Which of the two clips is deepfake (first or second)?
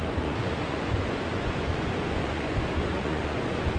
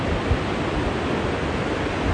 first